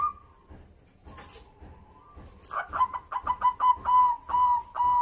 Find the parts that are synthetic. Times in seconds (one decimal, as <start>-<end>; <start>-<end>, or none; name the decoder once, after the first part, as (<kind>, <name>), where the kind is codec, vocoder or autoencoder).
1.0-3.7 (vocoder, BigVGAN v2)